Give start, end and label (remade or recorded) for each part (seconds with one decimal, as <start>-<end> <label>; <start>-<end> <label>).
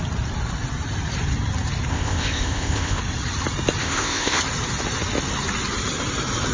0.0-1.9 recorded; 1.9-3.0 remade; 3.0-3.8 recorded; 3.8-4.4 remade; 4.4-6.5 recorded